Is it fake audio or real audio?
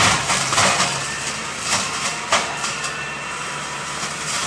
fake